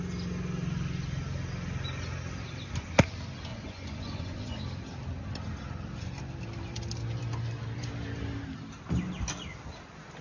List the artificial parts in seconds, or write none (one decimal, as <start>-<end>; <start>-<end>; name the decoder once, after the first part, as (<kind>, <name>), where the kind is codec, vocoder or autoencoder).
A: 3.5-4.6 (vocoder, Vocos)

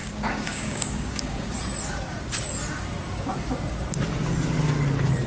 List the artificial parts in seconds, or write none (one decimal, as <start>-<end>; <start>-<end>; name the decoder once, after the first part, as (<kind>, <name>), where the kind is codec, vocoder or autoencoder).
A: 0.0-1.5 (codec, DAC)

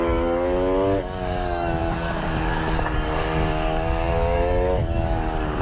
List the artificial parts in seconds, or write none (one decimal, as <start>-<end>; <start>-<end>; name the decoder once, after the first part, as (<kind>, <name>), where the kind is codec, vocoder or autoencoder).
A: 0.0-5.6 (codec, DAC)

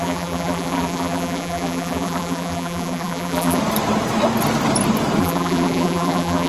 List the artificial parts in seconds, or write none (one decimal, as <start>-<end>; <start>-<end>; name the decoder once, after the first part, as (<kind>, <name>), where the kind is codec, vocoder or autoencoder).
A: 0.0-3.6 (vocoder, BigVGAN v2); 5.2-6.5

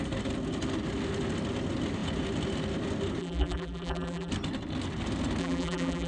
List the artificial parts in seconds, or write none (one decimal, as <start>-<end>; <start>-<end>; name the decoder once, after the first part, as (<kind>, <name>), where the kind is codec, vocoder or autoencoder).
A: 3.2-4.3 (vocoder, BigVGAN v2); 5.4-6.1